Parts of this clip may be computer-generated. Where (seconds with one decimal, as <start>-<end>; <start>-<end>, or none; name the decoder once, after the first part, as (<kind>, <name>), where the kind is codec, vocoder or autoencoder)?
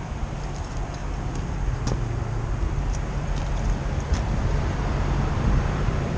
0.0-1.0 (vocoder, BigVGAN v2); 2.6-6.2